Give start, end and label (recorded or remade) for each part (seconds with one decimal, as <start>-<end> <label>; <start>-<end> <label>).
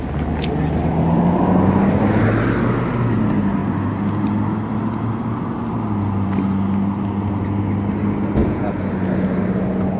0.0-8.4 recorded; 8.4-8.9 remade; 8.9-10.0 recorded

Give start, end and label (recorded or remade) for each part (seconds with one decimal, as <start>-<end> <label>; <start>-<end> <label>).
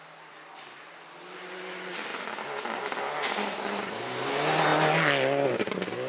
0.0-6.1 recorded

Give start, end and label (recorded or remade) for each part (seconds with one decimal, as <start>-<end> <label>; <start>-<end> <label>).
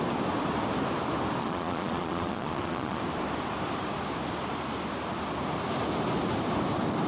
0.0-1.4 recorded; 1.4-3.0 remade; 3.0-7.1 recorded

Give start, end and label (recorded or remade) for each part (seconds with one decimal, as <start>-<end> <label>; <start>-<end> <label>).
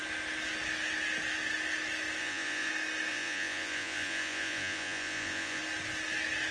0.0-2.2 recorded; 2.2-2.7 remade; 2.7-3.1 recorded; 3.1-5.6 remade; 5.6-6.5 recorded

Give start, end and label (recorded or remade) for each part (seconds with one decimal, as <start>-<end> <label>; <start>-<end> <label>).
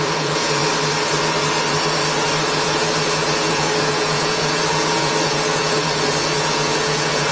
0.0-0.6 remade; 0.6-2.5 recorded; 2.5-7.3 remade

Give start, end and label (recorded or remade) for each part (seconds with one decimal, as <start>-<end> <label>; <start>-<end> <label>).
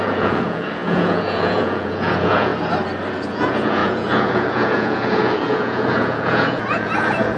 0.0-2.5 remade; 2.5-3.1 recorded; 3.1-7.4 remade